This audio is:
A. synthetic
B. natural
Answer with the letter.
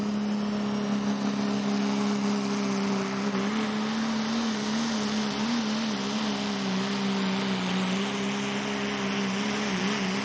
B